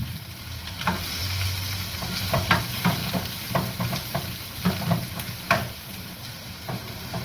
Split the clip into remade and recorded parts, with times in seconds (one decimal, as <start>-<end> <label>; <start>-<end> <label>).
0.0-1.2 remade; 1.2-2.6 recorded; 2.6-3.0 remade; 3.0-4.7 recorded; 4.7-7.2 remade